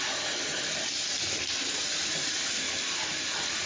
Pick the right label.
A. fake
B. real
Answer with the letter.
B